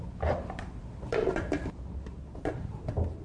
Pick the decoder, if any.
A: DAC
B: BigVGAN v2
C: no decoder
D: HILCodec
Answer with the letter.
C